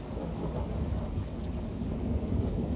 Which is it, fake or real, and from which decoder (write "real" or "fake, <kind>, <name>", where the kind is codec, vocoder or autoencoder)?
fake, codec, DAC